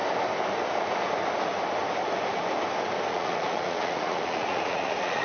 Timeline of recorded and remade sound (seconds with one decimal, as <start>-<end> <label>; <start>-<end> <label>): 0.0-3.1 recorded; 3.1-5.2 remade